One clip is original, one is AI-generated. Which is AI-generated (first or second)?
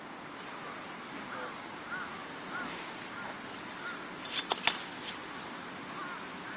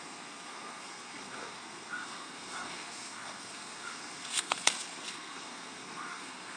second